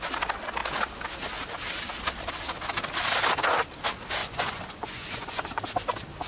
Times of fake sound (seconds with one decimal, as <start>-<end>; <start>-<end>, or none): 4.2-5.6